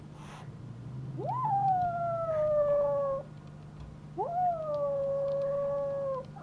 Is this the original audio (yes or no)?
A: yes